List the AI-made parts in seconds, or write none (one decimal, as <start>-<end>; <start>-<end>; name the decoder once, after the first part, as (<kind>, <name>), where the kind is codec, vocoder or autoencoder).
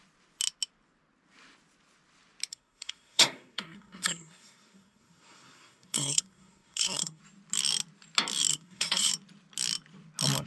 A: 2.5-7.2 (codec, SNAC); 8.5-9.1